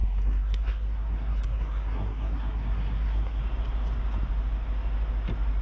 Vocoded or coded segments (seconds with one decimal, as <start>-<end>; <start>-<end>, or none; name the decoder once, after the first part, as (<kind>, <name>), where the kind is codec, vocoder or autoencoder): 0.0-3.4 (codec, SNAC)